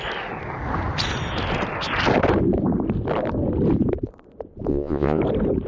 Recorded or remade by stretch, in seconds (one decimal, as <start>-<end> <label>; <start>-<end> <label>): 0.0-4.7 recorded; 4.7-5.2 remade; 5.2-5.7 recorded